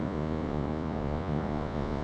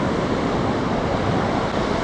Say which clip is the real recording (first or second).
second